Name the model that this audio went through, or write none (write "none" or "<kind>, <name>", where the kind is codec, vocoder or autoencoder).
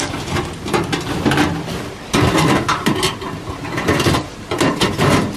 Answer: none